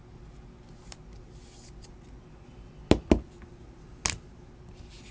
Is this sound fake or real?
real